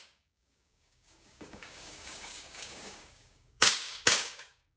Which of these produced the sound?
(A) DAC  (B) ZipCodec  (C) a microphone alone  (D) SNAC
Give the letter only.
A